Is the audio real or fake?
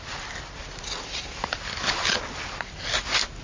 real